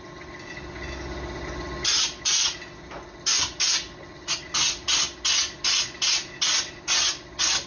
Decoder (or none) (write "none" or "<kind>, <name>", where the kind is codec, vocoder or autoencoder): none